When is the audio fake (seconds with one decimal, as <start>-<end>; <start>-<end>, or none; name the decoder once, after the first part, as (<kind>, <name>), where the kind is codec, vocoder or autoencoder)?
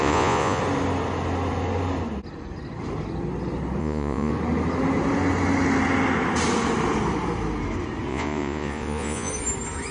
0.0-0.6 (vocoder, Vocos); 3.8-4.3; 8.1-9.3